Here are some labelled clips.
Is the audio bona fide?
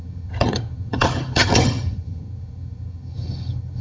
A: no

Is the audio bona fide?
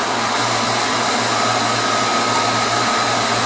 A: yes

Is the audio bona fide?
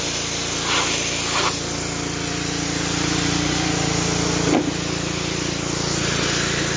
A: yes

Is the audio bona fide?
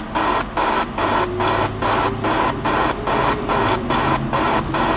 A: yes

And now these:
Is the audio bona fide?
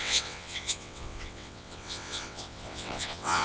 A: no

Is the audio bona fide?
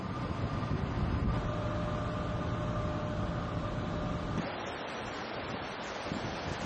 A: yes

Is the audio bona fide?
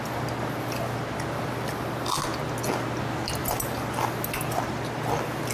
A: yes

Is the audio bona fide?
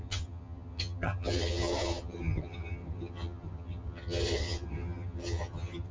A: no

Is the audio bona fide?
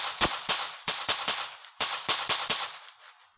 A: yes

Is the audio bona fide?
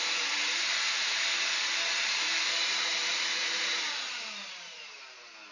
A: no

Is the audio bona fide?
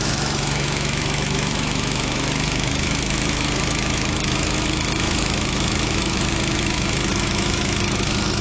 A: no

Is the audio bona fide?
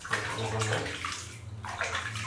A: yes